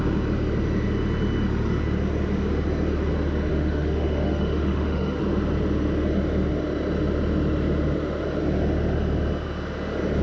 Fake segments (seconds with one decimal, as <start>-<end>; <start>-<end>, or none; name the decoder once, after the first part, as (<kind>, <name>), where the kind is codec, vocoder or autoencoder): 3.5-5.2 (autoencoder, DAC-VAE)